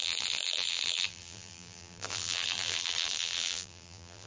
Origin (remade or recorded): remade